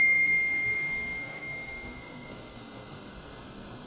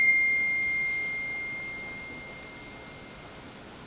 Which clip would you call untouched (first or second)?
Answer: second